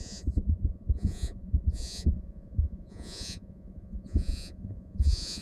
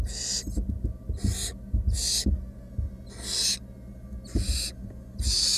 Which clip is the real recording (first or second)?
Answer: second